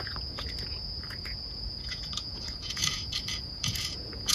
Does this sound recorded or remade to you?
remade